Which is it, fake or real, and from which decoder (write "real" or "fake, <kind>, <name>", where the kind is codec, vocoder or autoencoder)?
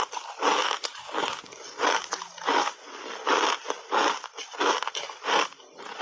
real